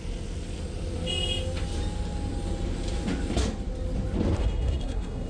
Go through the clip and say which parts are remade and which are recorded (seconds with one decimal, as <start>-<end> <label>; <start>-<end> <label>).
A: 0.0-4.4 recorded; 4.4-5.3 remade